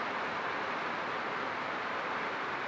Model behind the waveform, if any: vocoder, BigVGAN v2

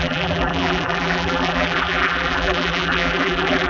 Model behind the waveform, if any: vocoder, BigVGAN v2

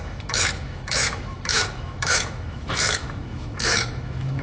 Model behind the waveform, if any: autoencoder, DAC-VAE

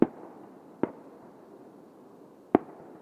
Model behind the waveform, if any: vocoder, BigVGAN v2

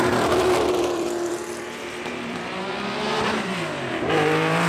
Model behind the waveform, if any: vocoder, BigVGAN v2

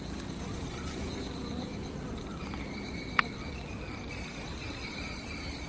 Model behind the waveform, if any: none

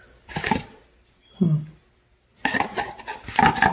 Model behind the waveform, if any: none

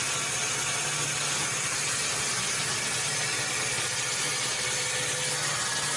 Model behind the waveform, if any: none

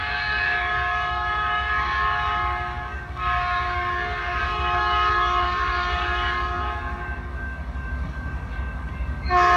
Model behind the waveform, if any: codec, DAC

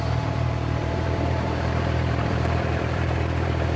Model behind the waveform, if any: vocoder, BigVGAN v2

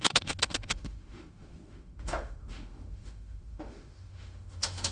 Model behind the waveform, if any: autoencoder, DAC-VAE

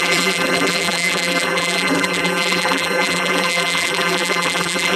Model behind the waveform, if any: vocoder, BigVGAN v2